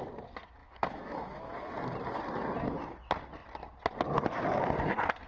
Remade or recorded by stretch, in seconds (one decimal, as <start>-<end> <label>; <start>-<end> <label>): 0.0-0.6 recorded; 0.6-1.7 remade; 1.7-5.3 recorded

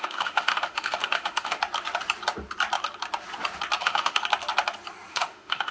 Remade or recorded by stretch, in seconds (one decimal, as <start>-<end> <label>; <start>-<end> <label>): 0.0-1.6 remade; 1.6-3.8 recorded; 3.8-4.2 remade; 4.2-5.1 recorded; 5.1-5.7 remade

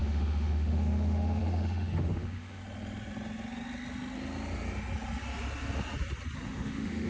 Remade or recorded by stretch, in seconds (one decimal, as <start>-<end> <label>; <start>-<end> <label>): 0.0-2.6 remade; 2.6-6.5 recorded; 6.5-7.1 remade

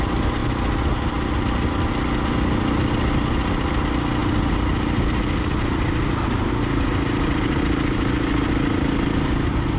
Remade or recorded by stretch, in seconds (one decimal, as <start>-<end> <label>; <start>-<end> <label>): 0.0-9.8 recorded

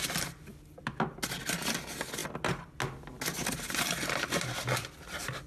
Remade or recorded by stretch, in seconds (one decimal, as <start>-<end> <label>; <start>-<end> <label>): 0.0-5.5 recorded